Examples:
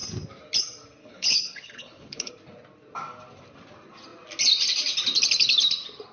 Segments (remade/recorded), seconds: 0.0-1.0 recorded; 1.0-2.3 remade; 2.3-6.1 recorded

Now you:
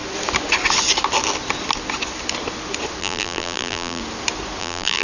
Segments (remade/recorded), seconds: 0.0-3.0 recorded; 3.0-4.0 remade; 4.0-4.6 recorded; 4.6-5.0 remade

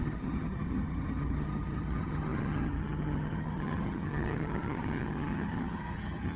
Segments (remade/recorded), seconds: 0.0-6.4 remade

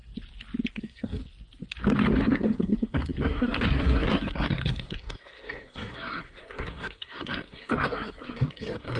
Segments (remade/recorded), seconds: 0.0-0.7 recorded; 0.7-1.2 remade; 1.2-2.2 recorded; 2.2-9.0 remade

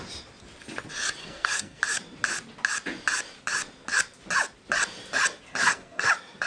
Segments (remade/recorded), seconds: 0.0-1.2 recorded; 1.2-1.8 remade; 1.8-5.6 recorded; 5.6-6.1 remade; 6.1-6.5 recorded